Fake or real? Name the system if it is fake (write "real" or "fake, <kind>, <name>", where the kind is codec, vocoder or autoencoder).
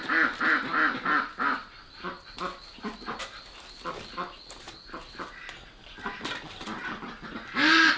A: real